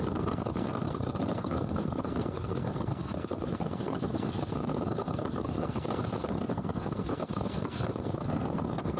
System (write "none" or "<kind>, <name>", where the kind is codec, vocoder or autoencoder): codec, SNAC